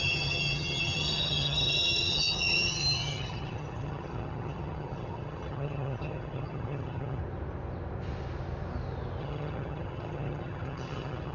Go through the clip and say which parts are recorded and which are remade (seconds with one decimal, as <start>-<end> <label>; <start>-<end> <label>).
0.0-7.2 remade; 7.2-9.2 recorded; 9.2-11.3 remade